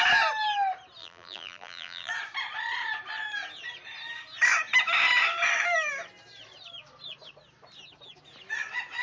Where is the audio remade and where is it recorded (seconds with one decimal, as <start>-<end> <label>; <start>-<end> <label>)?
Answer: 0.0-1.0 recorded; 1.0-2.1 remade; 2.1-9.0 recorded